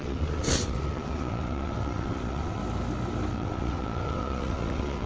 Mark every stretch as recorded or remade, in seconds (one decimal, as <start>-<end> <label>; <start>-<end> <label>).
0.0-2.6 remade; 2.6-3.3 recorded; 3.3-5.1 remade